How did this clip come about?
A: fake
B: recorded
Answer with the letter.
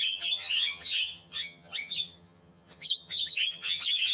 A